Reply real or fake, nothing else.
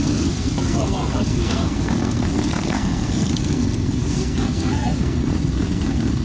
fake